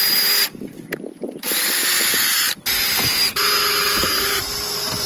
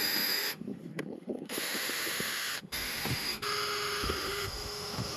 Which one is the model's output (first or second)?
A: second